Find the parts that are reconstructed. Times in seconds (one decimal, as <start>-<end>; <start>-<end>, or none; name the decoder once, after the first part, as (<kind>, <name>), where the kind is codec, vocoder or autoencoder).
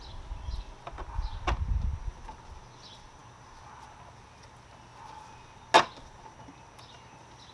none